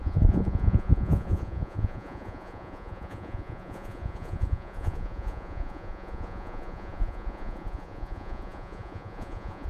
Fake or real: fake